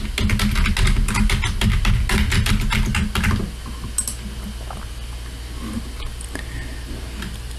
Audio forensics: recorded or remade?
recorded